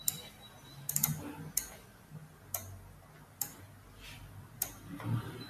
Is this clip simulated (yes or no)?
no